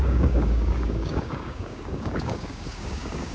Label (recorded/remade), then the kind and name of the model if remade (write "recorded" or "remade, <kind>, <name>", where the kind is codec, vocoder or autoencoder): remade, codec, DAC